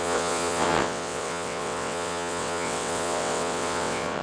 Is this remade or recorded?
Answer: remade